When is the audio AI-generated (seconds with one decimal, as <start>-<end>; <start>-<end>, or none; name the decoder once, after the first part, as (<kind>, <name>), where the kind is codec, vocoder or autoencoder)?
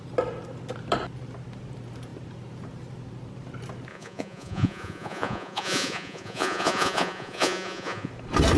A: 3.9-8.1 (vocoder, Vocos)